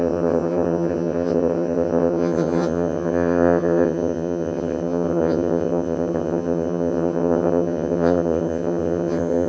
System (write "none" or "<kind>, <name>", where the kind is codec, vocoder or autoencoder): vocoder, HiFi-GAN